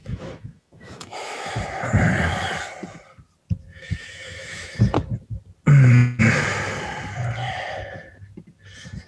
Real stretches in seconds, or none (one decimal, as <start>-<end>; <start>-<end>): 1.5-3.7; 4.8-9.1